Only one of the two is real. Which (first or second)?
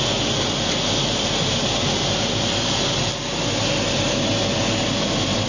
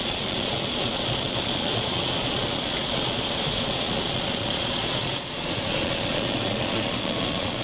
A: first